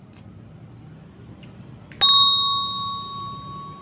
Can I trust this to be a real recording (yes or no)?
yes